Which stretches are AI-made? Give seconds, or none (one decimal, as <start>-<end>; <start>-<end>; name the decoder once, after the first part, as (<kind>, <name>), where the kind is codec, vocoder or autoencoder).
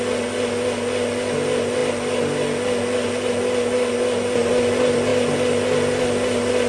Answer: none